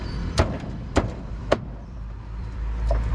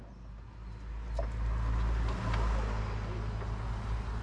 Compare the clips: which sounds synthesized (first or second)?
first